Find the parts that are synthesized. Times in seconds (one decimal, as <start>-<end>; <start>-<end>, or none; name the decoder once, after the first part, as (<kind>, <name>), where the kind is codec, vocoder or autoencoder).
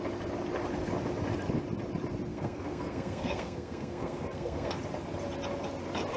2.3-4.8 (codec, SNAC)